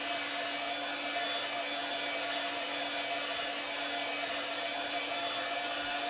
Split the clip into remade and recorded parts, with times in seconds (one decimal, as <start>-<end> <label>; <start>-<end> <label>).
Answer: 0.0-6.1 recorded